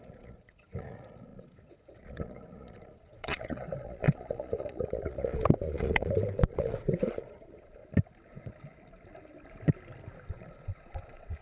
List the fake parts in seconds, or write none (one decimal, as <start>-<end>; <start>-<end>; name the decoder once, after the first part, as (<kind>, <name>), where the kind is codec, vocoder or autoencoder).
0.0-7.8 (vocoder, Vocos); 10.3-11.4